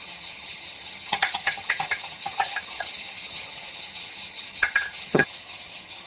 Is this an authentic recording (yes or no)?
no